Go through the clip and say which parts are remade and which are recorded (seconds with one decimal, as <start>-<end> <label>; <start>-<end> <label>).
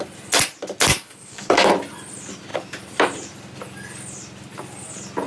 0.0-0.9 recorded; 0.9-1.7 remade; 1.7-5.3 recorded